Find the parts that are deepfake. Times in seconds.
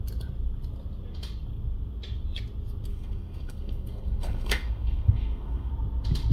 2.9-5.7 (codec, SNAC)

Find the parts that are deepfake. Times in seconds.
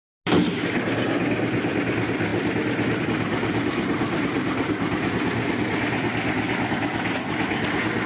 none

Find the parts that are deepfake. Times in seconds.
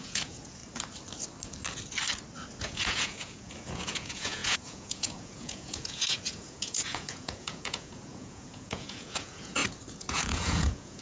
0.0-0.6 (vocoder, Vocos); 2.6-9.6; 10.1-11.0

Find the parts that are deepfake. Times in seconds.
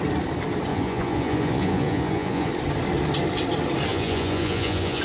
0.7-2.5 (vocoder, Vocos); 3.9-5.0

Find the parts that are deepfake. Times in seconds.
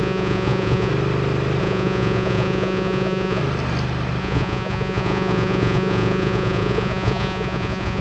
0.0-0.9 (vocoder, Vocos); 1.6-3.4; 4.2-8.0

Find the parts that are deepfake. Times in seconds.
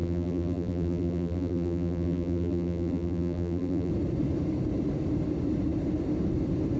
0.0-3.9 (vocoder, BigVGAN v2)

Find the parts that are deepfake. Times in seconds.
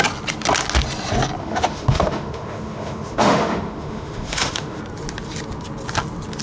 1.4-4.8 (autoencoder, DAC-VAE)